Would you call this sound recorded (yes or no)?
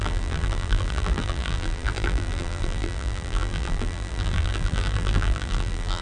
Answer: no